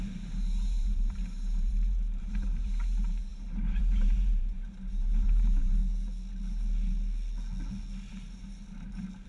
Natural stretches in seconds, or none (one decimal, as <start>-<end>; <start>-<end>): 5.8-8.1